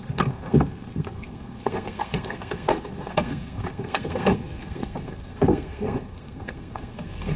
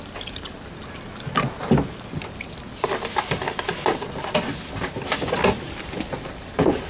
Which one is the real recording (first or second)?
second